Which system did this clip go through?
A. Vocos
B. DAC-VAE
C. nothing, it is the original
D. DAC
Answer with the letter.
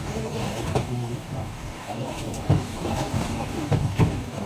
D